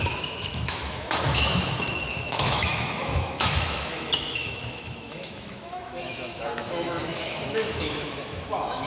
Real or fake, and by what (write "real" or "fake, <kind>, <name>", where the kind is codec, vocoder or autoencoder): fake, autoencoder, DAC-VAE